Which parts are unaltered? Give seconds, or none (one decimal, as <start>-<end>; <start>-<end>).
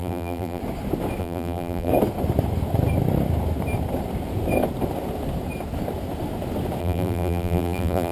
0.6-1.2; 1.9-6.8